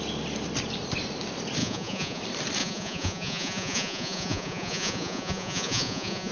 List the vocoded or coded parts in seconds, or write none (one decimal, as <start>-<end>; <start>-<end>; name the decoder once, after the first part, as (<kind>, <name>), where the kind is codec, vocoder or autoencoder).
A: 1.6-2.2 (vocoder, Vocos); 2.6-6.3